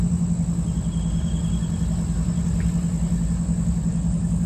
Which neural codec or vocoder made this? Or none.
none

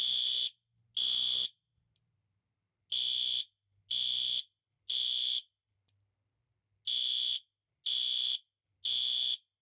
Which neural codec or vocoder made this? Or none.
none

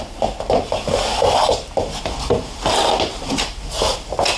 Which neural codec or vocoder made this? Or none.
none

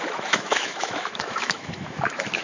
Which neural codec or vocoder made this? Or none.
autoencoder, DAC-VAE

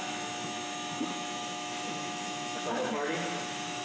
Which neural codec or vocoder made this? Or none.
autoencoder, DAC-VAE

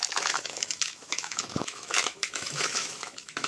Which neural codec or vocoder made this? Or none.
autoencoder, DAC-VAE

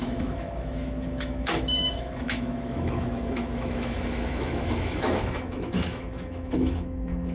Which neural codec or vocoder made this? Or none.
autoencoder, DAC-VAE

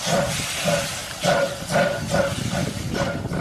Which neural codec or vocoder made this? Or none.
none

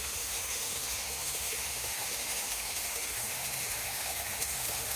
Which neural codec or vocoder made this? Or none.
autoencoder, DAC-VAE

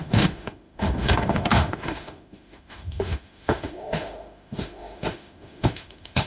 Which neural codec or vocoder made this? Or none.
autoencoder, DAC-VAE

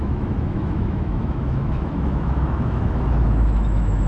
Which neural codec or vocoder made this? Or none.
autoencoder, DAC-VAE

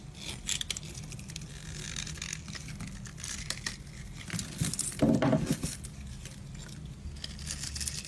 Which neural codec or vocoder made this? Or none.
none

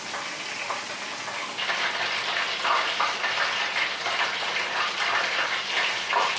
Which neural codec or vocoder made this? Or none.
none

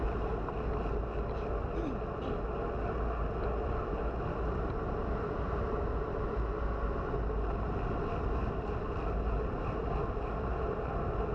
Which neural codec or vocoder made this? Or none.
none